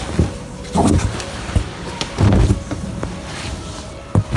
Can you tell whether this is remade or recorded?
recorded